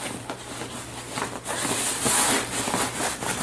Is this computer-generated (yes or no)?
no